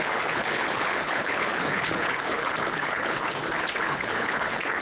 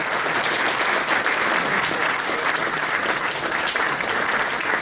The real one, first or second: second